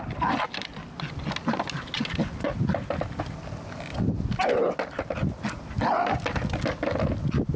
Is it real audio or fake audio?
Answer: real